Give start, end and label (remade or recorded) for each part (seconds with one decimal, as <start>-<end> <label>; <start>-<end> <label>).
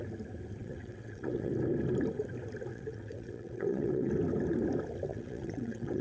0.0-0.6 recorded; 0.6-1.5 remade; 1.5-2.7 recorded; 2.7-4.1 remade; 4.1-5.1 recorded; 5.1-6.0 remade